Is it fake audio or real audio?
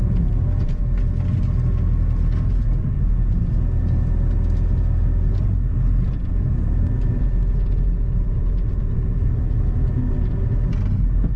real